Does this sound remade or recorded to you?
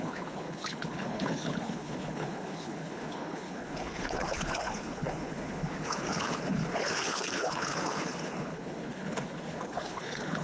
remade